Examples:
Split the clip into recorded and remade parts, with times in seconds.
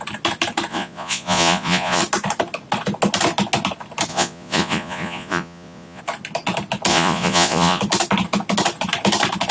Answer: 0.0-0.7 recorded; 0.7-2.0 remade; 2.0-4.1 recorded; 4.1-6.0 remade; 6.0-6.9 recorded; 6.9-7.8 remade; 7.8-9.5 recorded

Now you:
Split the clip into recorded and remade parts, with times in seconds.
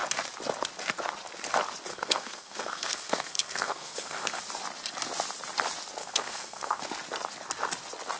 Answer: 0.0-1.9 recorded; 1.9-4.4 remade; 4.4-6.0 recorded; 6.0-6.8 remade; 6.8-8.2 recorded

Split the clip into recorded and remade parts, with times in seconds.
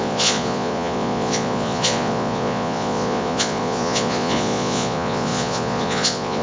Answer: 0.0-6.4 remade